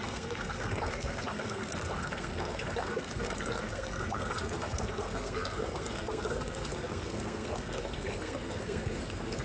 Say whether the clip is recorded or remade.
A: remade